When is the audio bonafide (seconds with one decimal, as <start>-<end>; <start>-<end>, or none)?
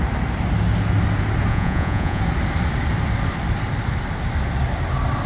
0.0-1.5; 2.2-5.3